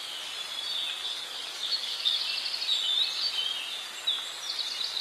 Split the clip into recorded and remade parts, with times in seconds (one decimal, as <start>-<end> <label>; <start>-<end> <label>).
0.0-1.0 recorded; 1.0-2.2 remade; 2.2-5.0 recorded